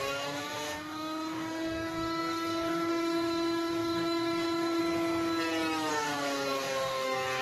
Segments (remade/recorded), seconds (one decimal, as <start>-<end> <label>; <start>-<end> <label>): 0.0-4.8 remade; 4.8-5.9 recorded; 5.9-7.4 remade